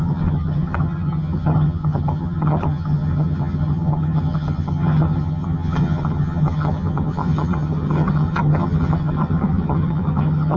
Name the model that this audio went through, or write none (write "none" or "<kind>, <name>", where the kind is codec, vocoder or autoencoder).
vocoder, HiFi-GAN